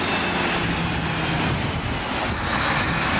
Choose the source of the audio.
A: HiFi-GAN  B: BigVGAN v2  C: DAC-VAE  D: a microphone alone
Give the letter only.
D